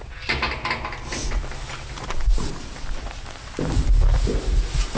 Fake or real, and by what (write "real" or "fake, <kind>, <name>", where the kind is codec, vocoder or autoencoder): real